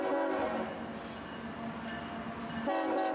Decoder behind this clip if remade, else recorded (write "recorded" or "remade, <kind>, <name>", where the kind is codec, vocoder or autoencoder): recorded